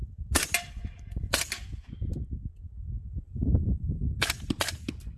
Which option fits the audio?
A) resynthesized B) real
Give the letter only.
B